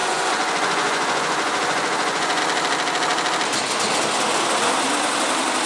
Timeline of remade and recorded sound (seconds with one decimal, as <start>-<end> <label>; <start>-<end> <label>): 0.0-2.4 remade; 2.4-5.7 recorded